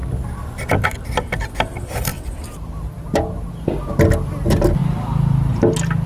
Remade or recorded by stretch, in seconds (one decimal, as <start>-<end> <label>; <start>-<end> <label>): 0.0-2.1 recorded; 2.1-3.5 remade; 3.5-6.1 recorded